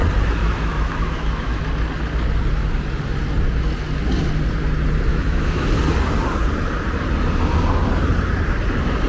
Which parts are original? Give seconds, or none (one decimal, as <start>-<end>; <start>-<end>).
0.0-0.4; 1.6-5.1; 5.7-9.1